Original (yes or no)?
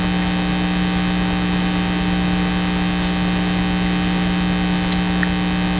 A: yes